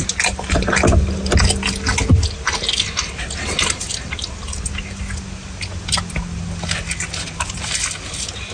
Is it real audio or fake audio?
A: real